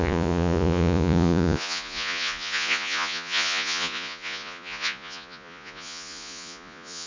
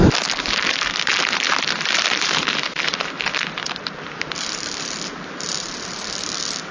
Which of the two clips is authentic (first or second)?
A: second